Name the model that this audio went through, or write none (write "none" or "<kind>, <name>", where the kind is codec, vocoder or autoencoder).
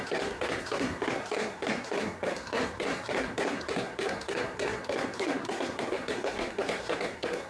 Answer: codec, SNAC